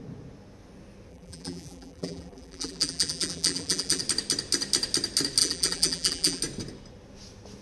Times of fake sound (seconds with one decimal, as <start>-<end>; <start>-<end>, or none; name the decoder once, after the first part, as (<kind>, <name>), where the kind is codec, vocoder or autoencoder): 1.1-4.0 (vocoder, BigVGAN v2); 5.4-6.4